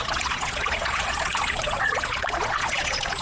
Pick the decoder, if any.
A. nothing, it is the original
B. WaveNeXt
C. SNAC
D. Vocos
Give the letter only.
D